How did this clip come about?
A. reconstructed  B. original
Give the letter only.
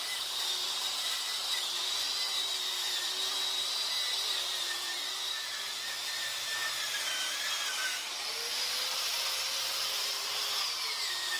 A